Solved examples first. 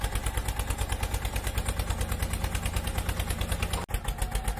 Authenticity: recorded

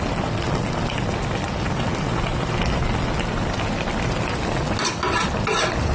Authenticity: recorded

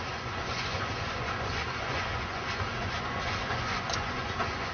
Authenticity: remade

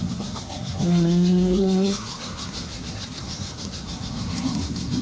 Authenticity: remade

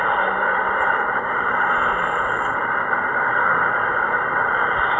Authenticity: remade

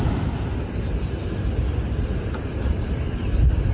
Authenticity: recorded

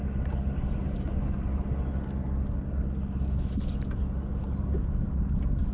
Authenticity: recorded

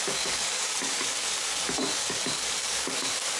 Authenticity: remade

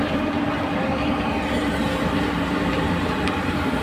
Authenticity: remade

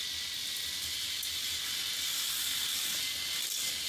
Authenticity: recorded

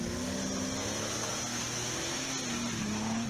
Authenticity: recorded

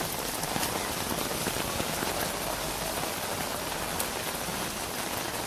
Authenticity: recorded